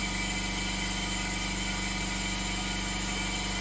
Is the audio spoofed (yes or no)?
no